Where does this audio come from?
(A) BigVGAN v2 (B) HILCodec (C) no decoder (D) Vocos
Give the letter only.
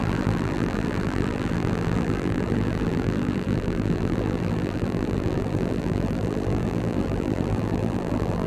A